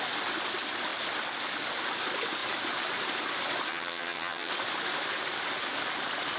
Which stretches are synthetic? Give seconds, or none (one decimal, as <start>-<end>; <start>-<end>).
3.7-4.5